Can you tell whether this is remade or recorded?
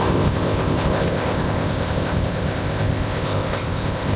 remade